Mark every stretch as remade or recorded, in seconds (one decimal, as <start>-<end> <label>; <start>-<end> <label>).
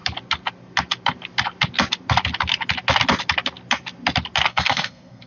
0.0-4.5 recorded; 4.5-5.3 remade